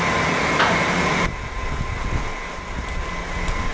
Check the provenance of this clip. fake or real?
real